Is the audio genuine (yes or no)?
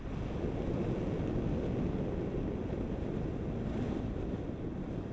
yes